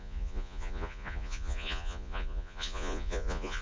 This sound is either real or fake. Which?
fake